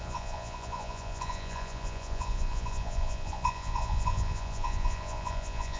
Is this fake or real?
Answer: fake